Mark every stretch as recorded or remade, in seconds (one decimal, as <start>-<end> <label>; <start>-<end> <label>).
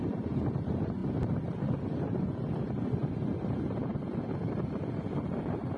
0.0-5.8 recorded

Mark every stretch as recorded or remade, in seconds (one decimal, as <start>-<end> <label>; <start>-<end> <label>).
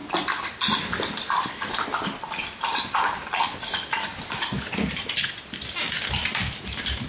0.0-4.1 remade; 4.1-5.9 recorded; 5.9-7.1 remade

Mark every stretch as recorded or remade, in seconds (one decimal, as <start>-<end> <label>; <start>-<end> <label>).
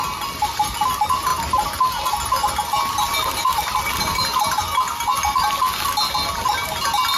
0.0-7.2 recorded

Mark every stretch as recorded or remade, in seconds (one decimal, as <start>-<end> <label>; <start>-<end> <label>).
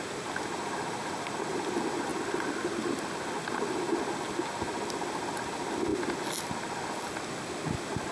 0.0-8.1 recorded